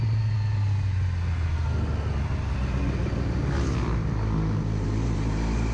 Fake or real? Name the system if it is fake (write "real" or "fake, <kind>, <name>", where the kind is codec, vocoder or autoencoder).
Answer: real